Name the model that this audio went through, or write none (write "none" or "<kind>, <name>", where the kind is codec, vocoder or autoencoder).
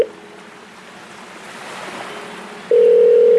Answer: none